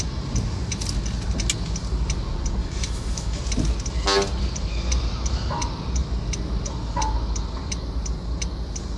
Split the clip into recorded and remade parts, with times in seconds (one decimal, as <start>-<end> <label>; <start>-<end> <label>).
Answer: 0.0-2.6 recorded; 2.6-3.4 remade; 3.4-9.0 recorded